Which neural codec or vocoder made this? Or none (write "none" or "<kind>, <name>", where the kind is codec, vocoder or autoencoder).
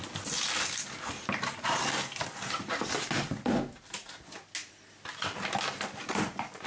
none